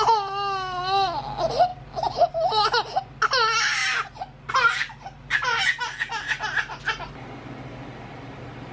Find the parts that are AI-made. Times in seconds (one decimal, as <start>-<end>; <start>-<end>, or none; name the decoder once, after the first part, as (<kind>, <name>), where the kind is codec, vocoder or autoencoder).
none